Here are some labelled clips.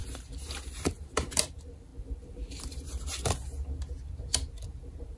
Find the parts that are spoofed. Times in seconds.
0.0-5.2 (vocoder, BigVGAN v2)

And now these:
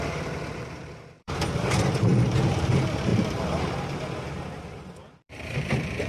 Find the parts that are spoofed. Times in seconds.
0.0-6.1 (vocoder, BigVGAN v2)

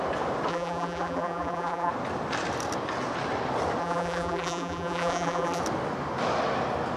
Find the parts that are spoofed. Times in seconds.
0.5-1.9 (vocoder, BigVGAN v2); 3.8-5.6

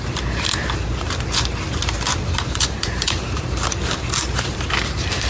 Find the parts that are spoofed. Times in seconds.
2.1-5.3 (vocoder, BigVGAN v2)

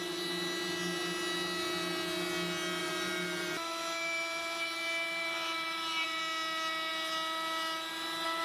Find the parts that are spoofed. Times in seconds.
2.8-6.2 (vocoder, BigVGAN v2)

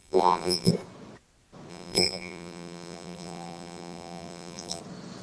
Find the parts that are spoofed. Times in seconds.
0.0-0.7 (vocoder, BigVGAN v2); 1.7-4.8